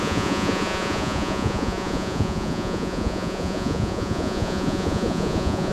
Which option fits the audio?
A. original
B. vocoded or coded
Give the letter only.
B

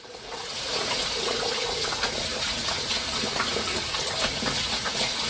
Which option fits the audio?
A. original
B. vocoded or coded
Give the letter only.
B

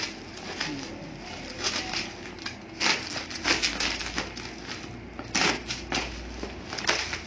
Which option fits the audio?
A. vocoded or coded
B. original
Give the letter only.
B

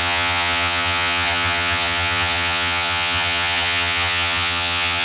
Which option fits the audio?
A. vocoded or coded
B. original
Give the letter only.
A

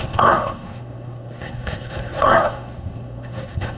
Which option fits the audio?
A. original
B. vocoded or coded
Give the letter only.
B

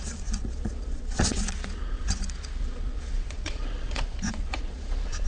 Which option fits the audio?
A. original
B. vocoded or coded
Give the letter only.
B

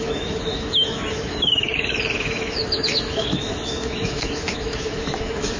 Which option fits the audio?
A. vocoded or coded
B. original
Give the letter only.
A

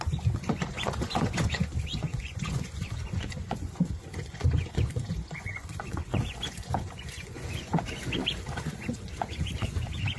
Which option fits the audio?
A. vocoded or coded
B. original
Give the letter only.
A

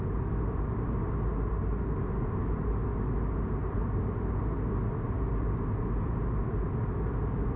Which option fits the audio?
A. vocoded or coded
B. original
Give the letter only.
B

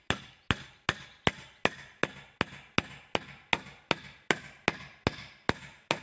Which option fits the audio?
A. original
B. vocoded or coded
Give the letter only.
A